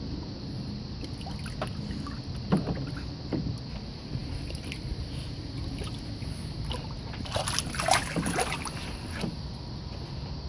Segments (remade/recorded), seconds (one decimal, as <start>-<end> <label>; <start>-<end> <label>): 0.0-10.5 recorded